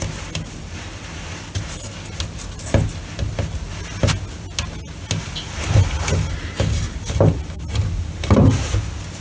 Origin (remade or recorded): recorded